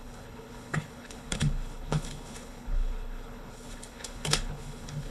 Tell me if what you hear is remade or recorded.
remade